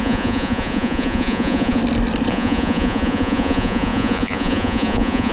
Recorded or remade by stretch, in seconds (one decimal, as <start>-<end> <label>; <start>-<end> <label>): 0.0-1.8 remade; 1.8-2.3 recorded; 2.3-5.3 remade